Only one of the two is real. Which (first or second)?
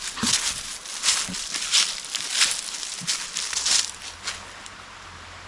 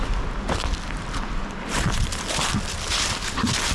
first